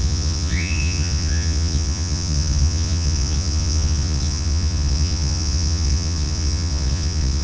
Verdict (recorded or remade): remade